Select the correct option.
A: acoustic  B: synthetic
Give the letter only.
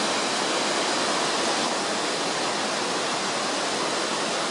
A